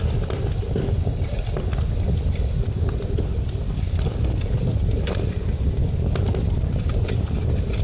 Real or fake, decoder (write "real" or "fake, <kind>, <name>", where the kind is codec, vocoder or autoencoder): real